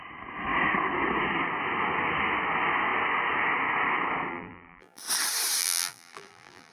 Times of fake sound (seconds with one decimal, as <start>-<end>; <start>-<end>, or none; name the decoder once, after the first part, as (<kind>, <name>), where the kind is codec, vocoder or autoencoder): 4.3-5.0 (vocoder, BigVGAN v2); 5.6-6.7